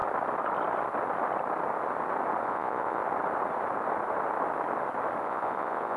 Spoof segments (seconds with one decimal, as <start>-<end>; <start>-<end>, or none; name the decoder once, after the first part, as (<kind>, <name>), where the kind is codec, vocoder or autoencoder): 2.4-3.0 (vocoder, Vocos); 5.2-6.0